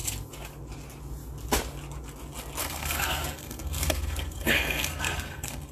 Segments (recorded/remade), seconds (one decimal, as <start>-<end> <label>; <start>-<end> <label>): 0.0-2.6 recorded; 2.6-5.7 remade

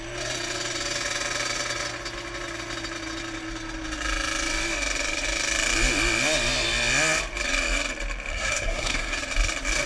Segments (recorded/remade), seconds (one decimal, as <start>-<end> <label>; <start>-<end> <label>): 0.0-8.3 recorded; 8.3-9.2 remade; 9.2-9.9 recorded

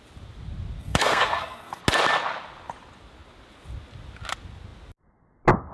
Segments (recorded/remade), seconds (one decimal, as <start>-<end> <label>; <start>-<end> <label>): 0.0-0.8 recorded; 0.8-1.8 remade; 1.8-5.7 recorded

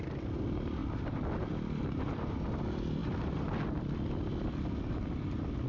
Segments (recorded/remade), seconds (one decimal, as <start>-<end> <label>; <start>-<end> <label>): 0.0-5.7 recorded

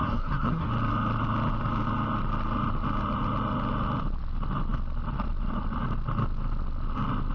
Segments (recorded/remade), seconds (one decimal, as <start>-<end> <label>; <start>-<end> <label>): 0.0-0.7 remade; 0.7-7.3 recorded

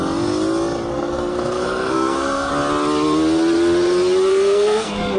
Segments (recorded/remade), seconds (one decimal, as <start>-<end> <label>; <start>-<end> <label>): 0.0-0.9 recorded; 0.9-2.5 remade; 2.5-4.3 recorded; 4.3-5.2 remade

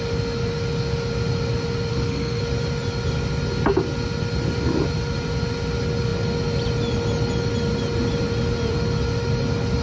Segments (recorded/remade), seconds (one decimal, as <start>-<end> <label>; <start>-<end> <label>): 0.0-1.9 recorded; 1.9-2.4 remade; 2.4-9.8 recorded

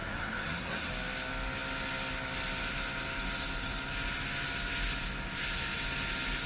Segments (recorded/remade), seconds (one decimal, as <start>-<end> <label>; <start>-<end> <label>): 0.0-0.9 remade; 0.9-6.5 recorded